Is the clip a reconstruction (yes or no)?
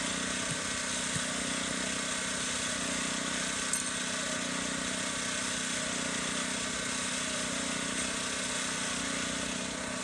no